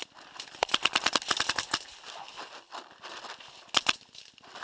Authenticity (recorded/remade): recorded